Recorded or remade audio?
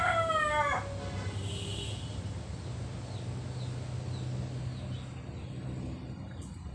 recorded